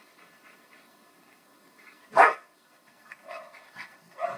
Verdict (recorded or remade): remade